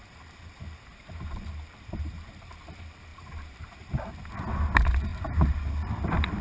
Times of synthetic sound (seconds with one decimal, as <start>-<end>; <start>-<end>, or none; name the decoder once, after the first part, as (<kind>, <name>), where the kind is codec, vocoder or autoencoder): 0.9-2.6 (vocoder, BigVGAN v2); 3.1-4.1; 5.1-5.9